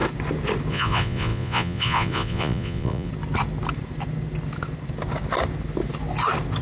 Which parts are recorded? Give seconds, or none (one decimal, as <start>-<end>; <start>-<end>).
0.0-0.7; 3.1-6.6